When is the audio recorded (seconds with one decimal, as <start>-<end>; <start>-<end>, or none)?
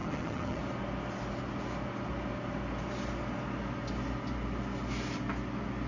0.6-5.9